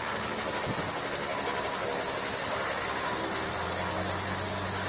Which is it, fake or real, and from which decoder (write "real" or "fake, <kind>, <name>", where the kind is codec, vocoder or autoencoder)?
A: real